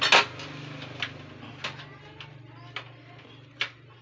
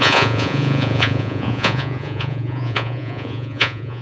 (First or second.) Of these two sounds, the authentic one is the first